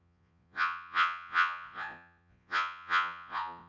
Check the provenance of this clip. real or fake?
fake